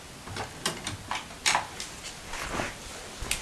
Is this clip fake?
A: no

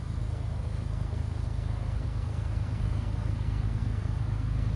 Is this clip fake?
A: yes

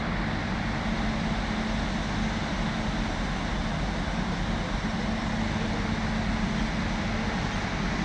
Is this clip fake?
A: no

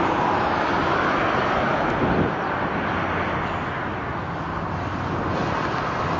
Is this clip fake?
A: no